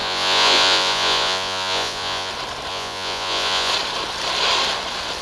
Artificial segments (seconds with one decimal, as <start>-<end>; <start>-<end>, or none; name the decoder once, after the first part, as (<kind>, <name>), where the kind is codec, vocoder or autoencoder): 0.0-2.3 (vocoder, Vocos); 2.7-3.7